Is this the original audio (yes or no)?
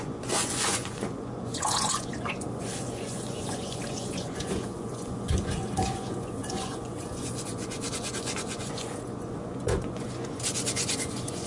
no